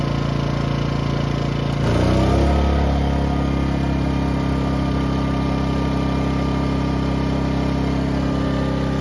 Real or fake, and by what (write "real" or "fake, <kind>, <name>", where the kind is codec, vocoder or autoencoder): real